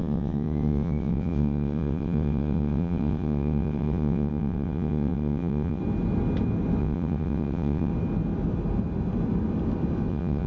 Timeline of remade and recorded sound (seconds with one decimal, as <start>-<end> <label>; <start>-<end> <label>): 0.0-5.8 remade; 5.8-6.8 recorded; 6.8-7.9 remade; 7.9-10.1 recorded; 10.1-10.5 remade